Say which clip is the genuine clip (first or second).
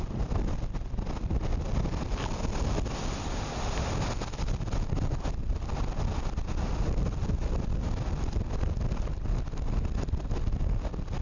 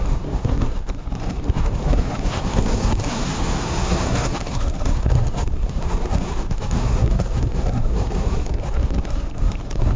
first